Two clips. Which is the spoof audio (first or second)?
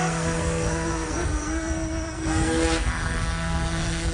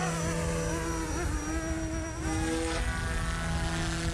first